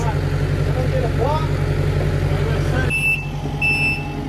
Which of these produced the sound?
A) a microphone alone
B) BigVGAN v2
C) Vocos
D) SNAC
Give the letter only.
A